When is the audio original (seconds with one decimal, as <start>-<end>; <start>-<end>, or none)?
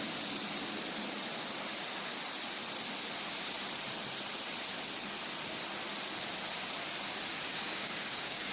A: 0.0-7.5